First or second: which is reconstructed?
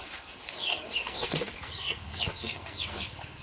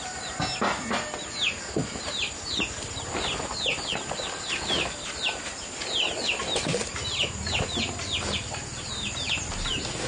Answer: first